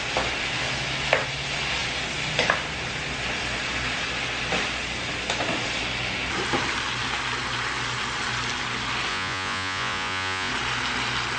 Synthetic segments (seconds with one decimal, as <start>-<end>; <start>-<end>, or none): 9.1-10.5